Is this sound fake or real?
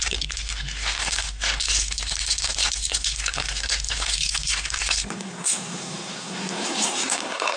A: fake